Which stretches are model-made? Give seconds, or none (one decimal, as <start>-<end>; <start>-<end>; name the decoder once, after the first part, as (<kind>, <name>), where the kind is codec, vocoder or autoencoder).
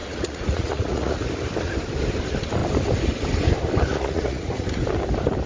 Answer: 0.0-1.3 (vocoder, Vocos); 3.9-4.8